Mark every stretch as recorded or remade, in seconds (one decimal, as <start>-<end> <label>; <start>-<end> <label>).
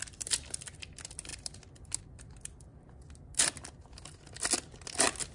0.0-5.3 recorded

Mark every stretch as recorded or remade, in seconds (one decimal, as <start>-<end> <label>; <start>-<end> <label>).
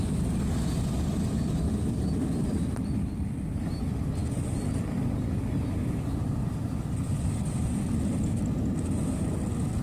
0.0-9.8 recorded